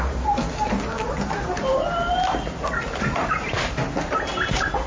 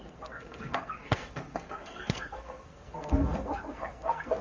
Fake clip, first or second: second